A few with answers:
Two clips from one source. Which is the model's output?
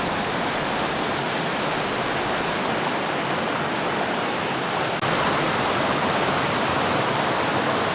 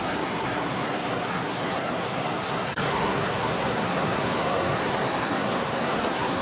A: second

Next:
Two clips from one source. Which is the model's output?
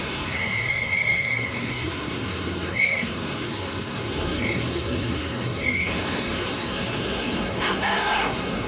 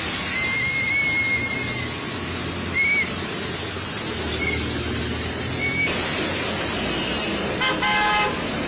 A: first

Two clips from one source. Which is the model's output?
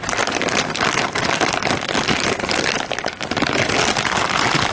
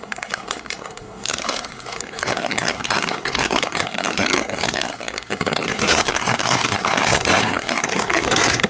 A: second